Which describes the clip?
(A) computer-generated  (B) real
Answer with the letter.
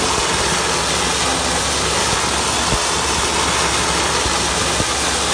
B